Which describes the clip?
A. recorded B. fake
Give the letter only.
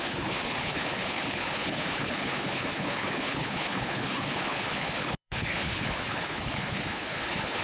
B